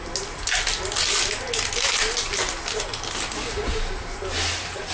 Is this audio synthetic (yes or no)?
no